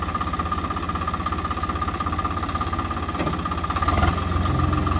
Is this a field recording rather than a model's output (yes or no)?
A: yes